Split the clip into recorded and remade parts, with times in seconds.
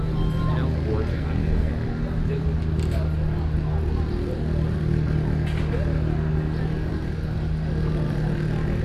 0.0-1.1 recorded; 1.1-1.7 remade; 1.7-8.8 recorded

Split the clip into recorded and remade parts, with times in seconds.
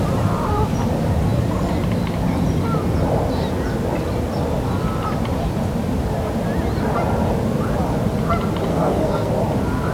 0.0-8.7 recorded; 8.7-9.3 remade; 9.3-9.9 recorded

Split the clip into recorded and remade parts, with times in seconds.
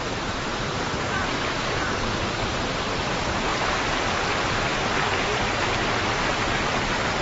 0.0-1.9 remade; 1.9-7.2 recorded